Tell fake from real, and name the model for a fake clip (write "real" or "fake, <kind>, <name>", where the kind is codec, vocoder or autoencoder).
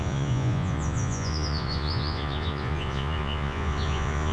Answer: fake, vocoder, Vocos